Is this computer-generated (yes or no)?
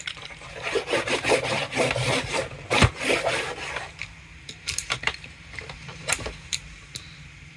no